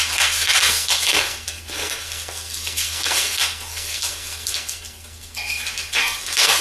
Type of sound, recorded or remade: remade